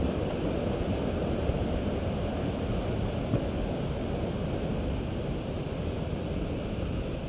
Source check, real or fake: real